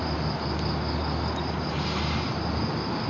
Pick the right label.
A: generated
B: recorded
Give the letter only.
B